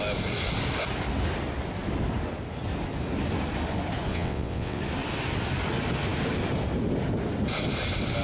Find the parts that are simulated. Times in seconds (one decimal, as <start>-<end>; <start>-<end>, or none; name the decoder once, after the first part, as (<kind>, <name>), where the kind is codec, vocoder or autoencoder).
4.1-4.8 (vocoder, WaveNeXt)